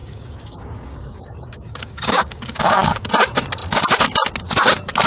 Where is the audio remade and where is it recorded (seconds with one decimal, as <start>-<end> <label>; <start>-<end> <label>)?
0.0-3.1 remade; 3.1-5.1 recorded